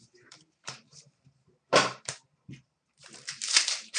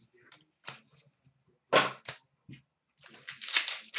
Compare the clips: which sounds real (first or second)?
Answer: second